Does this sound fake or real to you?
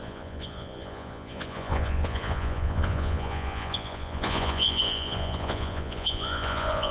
fake